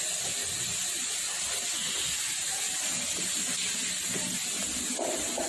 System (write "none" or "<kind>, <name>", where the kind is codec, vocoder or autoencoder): none